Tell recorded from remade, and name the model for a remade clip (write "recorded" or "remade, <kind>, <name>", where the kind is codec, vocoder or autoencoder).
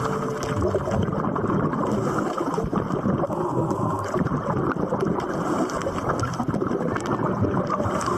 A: recorded